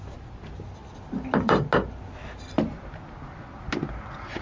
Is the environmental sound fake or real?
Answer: real